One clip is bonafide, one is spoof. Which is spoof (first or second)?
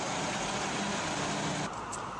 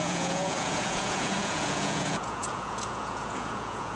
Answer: second